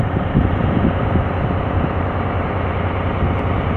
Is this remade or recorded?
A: recorded